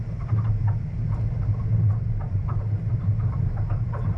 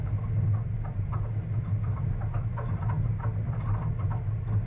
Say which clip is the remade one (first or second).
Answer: first